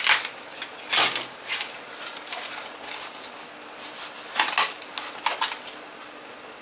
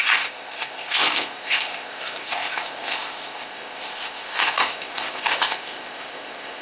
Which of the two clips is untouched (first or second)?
first